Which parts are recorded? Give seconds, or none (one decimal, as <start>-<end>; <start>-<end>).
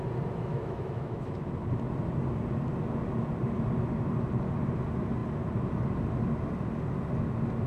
0.0-0.5; 1.5-7.7